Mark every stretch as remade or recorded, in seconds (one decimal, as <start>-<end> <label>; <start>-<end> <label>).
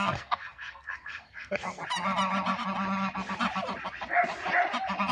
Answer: 0.0-1.8 remade; 1.8-5.1 recorded